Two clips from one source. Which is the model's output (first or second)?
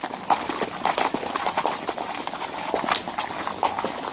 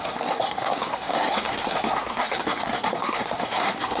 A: second